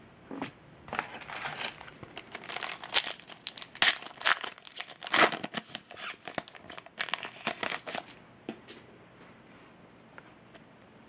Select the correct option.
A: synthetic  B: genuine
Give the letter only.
B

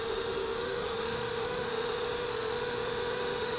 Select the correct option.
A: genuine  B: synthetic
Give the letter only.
B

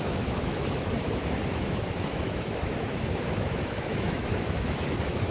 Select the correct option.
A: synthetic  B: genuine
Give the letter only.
A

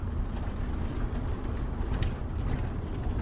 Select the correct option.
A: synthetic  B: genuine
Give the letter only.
B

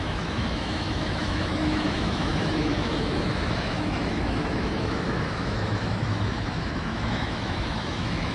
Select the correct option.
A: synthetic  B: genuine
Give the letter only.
A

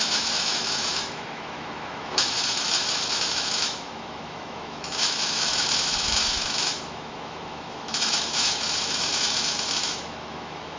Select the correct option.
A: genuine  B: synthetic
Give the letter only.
B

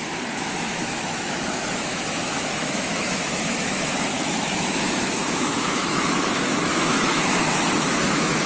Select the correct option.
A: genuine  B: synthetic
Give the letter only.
B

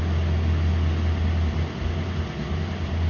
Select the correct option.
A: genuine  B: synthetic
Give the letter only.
A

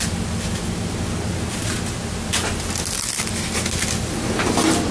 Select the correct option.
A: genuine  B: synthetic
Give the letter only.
A